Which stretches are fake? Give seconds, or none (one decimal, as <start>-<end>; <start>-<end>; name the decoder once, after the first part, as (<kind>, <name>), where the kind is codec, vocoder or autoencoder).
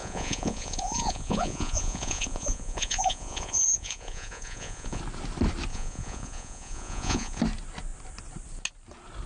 0.0-5.0 (vocoder, Vocos); 5.7-7.4